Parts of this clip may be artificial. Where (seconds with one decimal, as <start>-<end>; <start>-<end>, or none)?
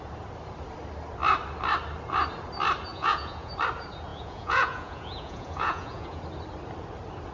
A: 2.9-3.5; 4.1-6.2